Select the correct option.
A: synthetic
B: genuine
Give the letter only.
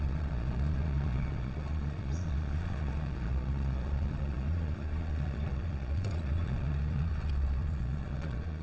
A